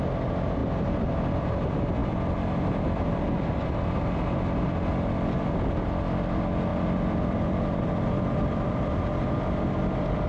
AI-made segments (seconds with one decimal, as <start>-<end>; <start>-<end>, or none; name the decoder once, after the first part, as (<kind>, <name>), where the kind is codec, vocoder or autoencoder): 0.6-1.1 (vocoder, BigVGAN v2); 2.0-3.7; 6.7-10.3